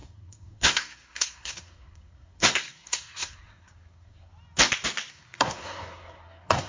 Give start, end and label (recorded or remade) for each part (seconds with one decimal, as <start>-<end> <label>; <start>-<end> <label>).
0.0-4.3 remade; 4.3-5.1 recorded; 5.1-6.7 remade